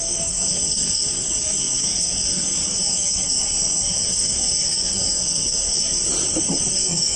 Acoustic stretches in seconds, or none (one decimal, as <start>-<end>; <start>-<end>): 6.0-6.8